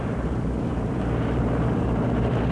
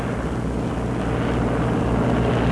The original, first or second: second